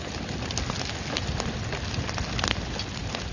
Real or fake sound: real